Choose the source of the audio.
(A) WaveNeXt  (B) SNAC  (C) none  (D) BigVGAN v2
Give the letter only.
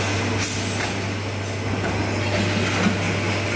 C